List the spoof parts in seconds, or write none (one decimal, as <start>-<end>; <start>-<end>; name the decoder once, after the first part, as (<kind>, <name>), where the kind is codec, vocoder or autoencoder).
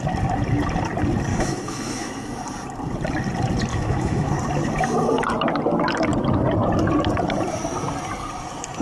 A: 1.3-2.4 (autoencoder, DAC-VAE); 3.7-4.3